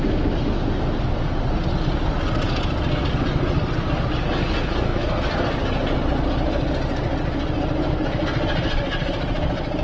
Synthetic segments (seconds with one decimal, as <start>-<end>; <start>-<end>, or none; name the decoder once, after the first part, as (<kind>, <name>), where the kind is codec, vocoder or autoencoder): none